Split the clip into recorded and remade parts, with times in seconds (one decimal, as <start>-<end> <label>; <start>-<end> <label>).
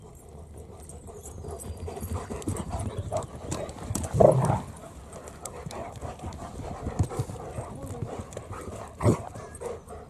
0.0-2.5 recorded; 2.5-3.3 remade; 3.3-10.1 recorded